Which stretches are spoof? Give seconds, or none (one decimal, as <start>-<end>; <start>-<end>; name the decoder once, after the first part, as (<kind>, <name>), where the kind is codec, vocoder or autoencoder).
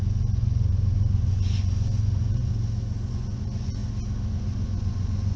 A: 0.0-2.5 (vocoder, Vocos); 3.1-3.8; 4.3-5.4